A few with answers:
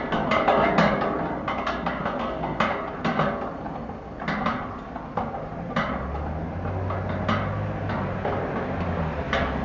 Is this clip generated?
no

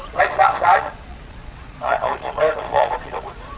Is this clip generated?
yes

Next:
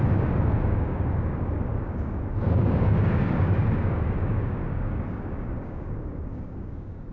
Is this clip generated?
yes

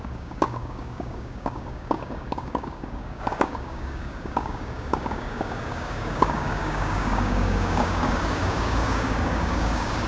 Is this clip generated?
yes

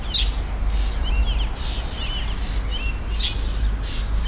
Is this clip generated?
no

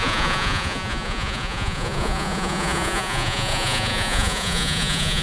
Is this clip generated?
yes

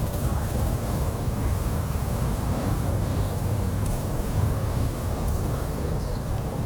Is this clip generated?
yes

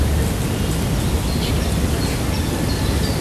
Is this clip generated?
no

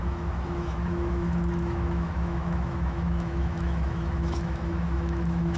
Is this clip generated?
yes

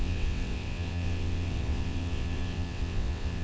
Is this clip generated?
yes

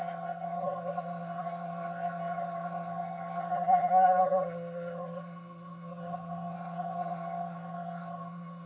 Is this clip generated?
yes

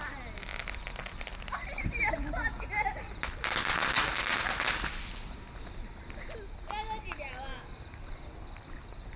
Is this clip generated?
no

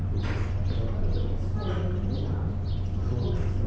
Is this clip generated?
no